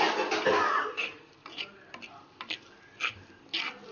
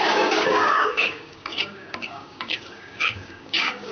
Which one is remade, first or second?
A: second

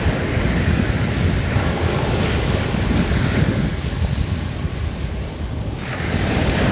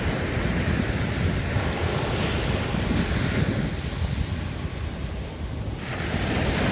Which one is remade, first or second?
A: first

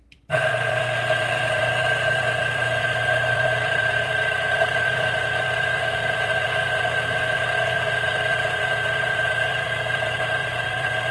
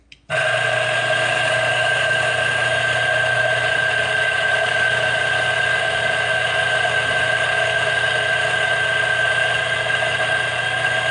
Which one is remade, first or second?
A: first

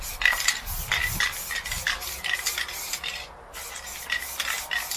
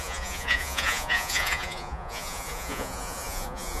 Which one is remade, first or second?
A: second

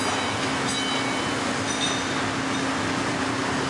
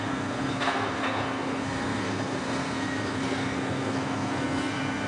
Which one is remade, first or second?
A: second